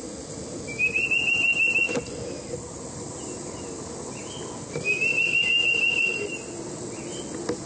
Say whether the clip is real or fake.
real